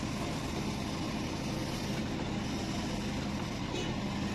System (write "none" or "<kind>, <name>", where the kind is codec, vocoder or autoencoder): none